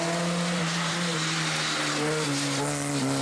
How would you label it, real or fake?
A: real